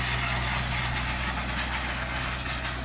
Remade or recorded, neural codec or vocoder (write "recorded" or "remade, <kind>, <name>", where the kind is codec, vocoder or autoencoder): recorded